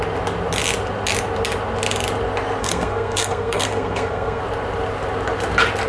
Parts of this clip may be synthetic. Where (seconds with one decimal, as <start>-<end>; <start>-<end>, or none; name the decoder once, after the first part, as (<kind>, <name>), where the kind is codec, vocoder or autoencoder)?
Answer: 2.6-4.4 (codec, SNAC)